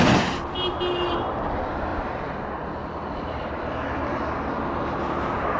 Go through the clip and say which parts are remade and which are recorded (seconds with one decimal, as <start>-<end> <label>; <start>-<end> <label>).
0.0-1.9 recorded; 1.9-3.5 remade; 3.5-5.6 recorded